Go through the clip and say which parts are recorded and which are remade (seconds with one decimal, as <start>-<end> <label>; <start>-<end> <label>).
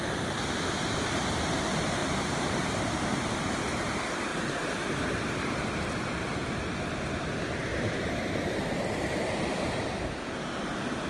0.0-2.0 recorded; 2.0-3.5 remade; 3.5-4.3 recorded; 4.3-5.0 remade; 5.0-7.7 recorded; 7.7-8.8 remade; 8.8-11.1 recorded